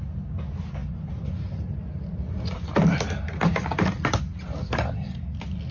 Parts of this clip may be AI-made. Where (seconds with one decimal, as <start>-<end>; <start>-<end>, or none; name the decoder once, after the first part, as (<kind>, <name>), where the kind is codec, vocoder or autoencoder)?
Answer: none